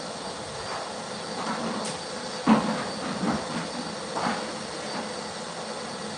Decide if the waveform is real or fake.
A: real